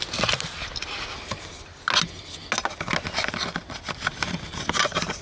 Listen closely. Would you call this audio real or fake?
real